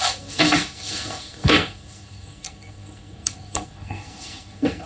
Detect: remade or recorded remade